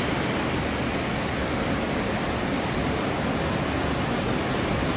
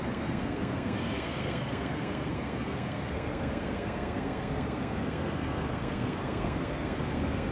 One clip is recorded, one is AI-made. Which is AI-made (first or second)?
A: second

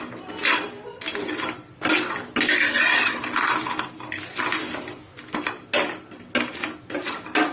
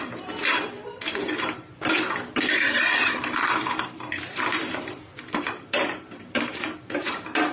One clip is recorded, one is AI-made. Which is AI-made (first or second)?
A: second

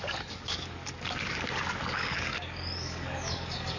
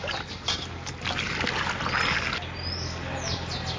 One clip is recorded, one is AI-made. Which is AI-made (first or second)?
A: first